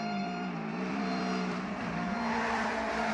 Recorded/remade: remade